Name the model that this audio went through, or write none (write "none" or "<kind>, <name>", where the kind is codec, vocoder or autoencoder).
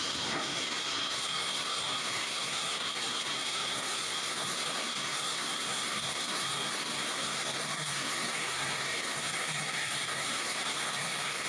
codec, SNAC